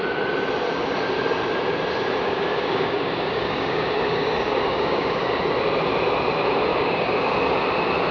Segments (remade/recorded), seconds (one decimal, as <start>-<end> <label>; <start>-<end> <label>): 0.0-2.2 recorded; 2.2-5.4 remade; 5.4-6.7 recorded; 6.7-7.3 remade; 7.3-8.1 recorded